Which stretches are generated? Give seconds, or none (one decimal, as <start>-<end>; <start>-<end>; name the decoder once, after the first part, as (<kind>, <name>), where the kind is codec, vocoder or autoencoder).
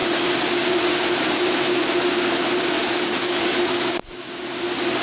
2.8-4.3 (codec, DAC)